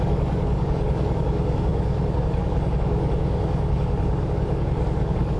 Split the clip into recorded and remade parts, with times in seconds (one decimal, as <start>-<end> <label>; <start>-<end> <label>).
0.0-5.4 remade